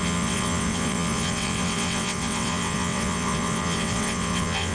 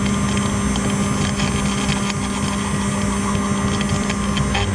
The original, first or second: second